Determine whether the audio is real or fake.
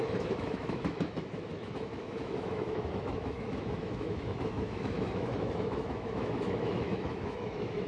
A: fake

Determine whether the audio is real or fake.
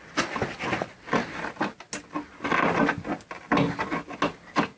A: real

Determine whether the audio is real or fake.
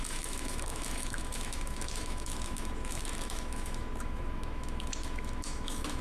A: fake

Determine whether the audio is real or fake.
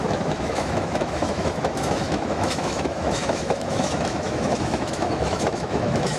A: fake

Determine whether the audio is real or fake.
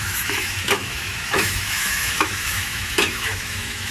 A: fake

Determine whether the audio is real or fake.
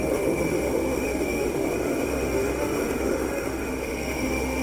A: fake